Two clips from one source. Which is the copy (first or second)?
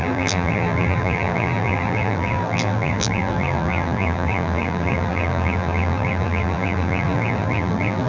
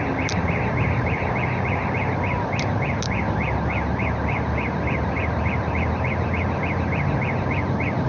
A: first